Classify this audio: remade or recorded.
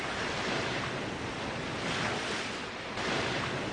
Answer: recorded